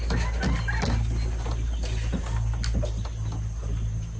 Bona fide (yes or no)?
yes